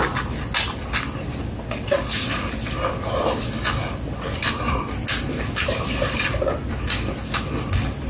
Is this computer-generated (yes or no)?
no